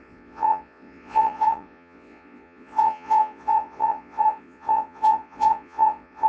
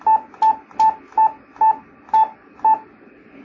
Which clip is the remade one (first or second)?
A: first